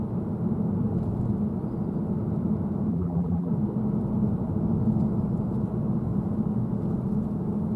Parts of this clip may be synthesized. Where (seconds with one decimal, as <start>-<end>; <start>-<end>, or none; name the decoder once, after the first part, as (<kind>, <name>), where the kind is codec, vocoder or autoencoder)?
2.9-3.5 (vocoder, BigVGAN v2)